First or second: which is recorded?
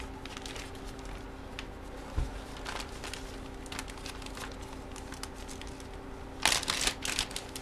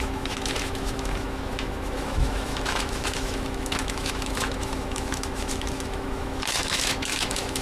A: first